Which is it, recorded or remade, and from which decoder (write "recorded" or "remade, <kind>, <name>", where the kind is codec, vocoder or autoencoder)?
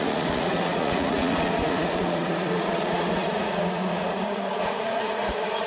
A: remade, vocoder, Vocos